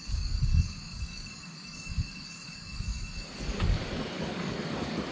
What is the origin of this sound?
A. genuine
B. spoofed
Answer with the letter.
B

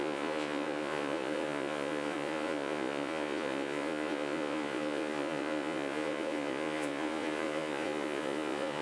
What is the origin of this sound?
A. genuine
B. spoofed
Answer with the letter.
B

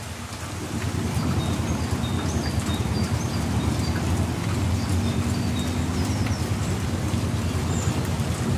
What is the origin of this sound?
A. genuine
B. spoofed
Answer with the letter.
A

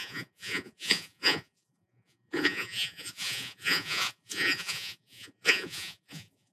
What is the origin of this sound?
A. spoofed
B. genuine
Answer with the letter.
A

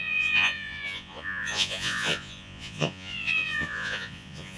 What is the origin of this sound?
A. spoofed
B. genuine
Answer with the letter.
A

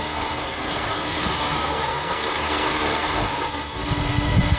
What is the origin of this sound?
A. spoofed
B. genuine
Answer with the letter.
A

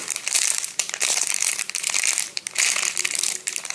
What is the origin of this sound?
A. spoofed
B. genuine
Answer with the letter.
A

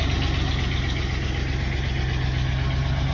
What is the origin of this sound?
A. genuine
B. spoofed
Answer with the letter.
A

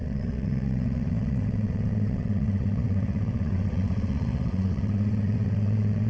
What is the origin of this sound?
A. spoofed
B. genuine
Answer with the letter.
A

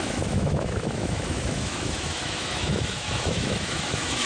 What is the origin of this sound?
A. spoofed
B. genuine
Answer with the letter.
A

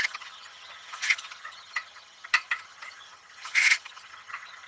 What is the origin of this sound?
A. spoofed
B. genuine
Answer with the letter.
A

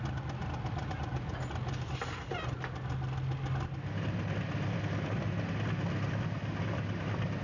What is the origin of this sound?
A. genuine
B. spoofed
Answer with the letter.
A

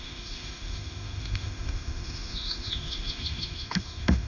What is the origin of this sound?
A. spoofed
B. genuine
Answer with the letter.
A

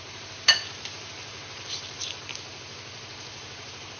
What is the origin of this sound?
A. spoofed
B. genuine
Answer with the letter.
A